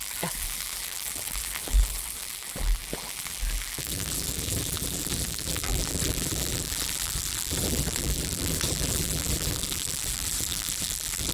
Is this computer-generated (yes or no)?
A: yes